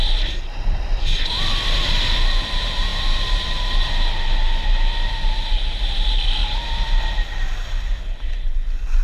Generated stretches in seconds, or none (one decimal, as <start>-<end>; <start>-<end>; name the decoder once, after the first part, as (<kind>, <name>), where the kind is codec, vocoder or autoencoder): none